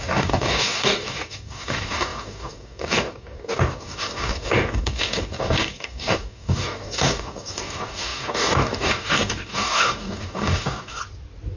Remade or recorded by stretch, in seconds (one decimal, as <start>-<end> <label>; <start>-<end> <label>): 0.0-11.0 remade; 11.0-11.6 recorded